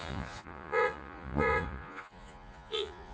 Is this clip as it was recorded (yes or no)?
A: no